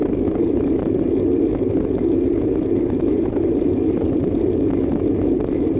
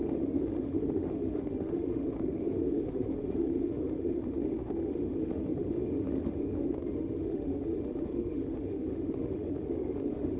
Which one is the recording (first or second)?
first